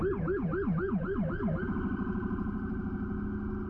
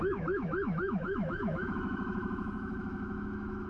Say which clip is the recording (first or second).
first